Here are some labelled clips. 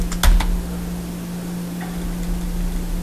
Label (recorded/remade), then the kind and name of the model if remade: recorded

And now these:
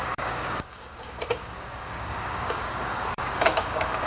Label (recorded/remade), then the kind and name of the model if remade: remade, codec, DAC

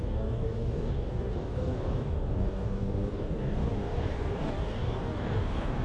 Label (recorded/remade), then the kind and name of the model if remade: remade, codec, DAC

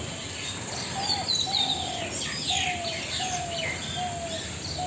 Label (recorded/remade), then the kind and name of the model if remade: recorded